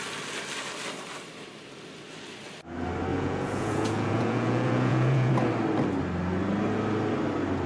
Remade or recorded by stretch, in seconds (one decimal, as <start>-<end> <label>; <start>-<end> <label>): 0.0-3.1 recorded; 3.1-5.3 remade; 5.3-7.7 recorded